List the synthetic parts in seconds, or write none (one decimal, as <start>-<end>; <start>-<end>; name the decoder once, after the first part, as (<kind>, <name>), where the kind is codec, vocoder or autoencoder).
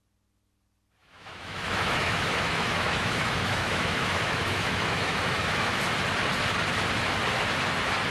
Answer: 1.0-5.8 (autoencoder, DAC-VAE)